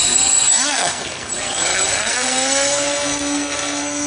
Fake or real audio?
fake